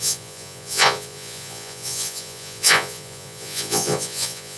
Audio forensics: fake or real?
fake